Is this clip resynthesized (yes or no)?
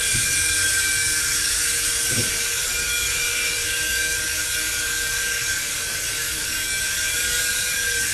yes